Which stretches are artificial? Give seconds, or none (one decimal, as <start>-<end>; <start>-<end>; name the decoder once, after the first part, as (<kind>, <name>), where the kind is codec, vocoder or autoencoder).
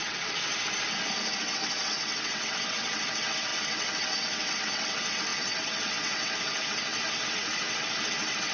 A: 0.0-0.5 (vocoder, WaveNeXt); 1.4-8.5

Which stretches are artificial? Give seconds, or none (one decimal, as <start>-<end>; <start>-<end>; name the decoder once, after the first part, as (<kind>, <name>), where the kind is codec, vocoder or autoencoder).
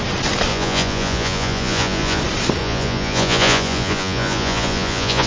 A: 0.5-2.2 (vocoder, Vocos); 2.6-5.3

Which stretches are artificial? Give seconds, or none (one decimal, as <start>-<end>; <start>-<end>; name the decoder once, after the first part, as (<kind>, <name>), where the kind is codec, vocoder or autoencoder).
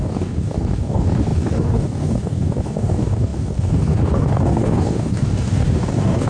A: 0.0-6.3 (codec, DAC)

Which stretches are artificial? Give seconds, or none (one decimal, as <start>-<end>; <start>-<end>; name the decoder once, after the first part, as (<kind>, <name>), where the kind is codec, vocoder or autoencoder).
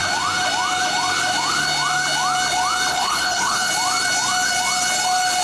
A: 2.9-3.7 (codec, HILCodec)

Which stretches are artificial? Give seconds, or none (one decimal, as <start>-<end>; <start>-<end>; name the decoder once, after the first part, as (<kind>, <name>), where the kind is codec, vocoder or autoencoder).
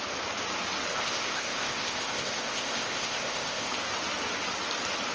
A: 0.9-3.7 (codec, ZipCodec)